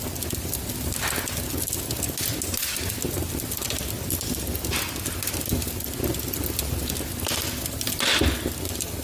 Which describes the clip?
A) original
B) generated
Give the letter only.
A